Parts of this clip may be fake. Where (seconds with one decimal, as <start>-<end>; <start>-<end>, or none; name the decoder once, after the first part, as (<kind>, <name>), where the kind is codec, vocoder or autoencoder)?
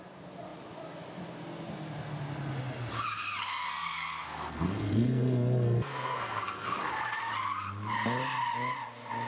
3.4-6.9 (codec, SNAC)